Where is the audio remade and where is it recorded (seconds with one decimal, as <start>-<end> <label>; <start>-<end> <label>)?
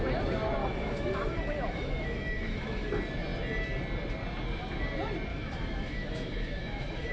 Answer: 0.0-0.6 recorded; 0.6-2.9 remade; 2.9-5.3 recorded; 5.3-7.1 remade